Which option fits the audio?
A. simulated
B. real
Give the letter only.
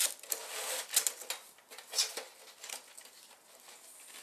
B